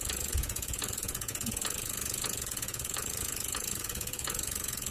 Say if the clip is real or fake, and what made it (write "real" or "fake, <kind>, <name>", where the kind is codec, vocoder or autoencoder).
fake, vocoder, Vocos